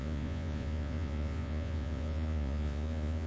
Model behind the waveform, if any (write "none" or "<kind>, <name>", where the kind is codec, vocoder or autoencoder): vocoder, Vocos